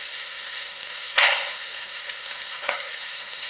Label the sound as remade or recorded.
remade